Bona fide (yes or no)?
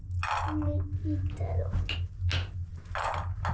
yes